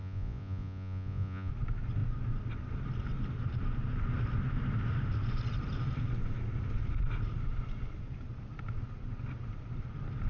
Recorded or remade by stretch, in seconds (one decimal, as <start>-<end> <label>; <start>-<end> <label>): 0.0-1.5 remade; 1.5-10.3 recorded